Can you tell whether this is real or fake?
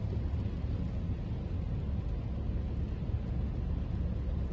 real